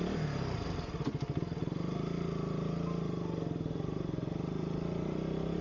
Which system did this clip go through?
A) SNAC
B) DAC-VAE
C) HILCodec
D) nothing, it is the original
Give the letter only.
D